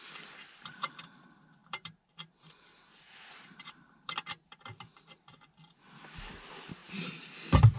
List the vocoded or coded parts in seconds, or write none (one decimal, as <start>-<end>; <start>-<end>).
1.6-5.6; 6.8-7.3